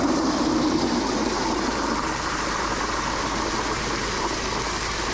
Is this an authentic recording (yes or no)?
no